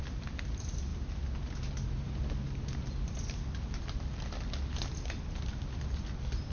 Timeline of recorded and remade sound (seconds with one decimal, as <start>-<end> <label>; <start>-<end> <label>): 0.0-6.5 recorded